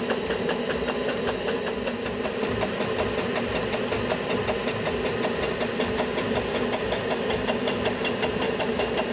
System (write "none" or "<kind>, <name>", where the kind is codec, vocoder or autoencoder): none